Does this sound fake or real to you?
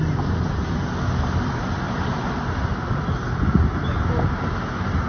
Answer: real